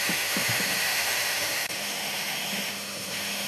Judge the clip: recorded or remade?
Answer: remade